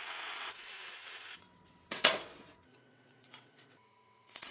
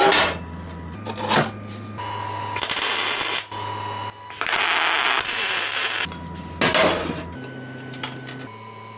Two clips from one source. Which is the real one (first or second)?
second